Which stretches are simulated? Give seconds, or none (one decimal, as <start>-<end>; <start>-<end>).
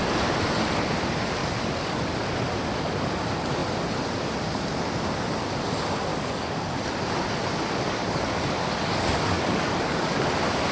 1.4-2.0; 6.1-6.7; 8.0-10.1